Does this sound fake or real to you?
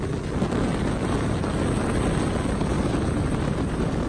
real